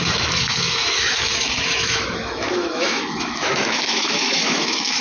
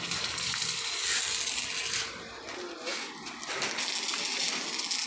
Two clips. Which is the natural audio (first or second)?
second